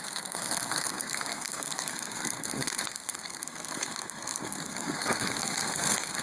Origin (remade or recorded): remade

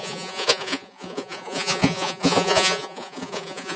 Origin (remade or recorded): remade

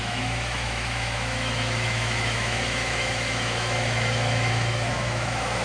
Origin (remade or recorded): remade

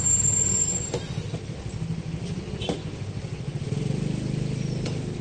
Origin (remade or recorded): recorded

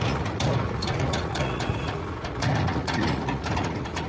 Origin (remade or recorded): remade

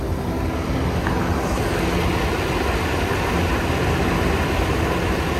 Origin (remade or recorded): recorded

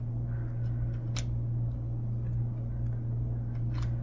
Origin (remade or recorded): recorded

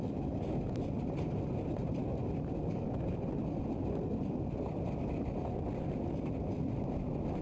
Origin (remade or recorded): recorded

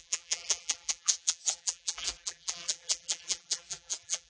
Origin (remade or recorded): remade